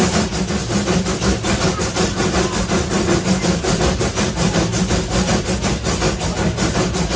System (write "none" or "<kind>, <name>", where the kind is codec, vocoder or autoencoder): none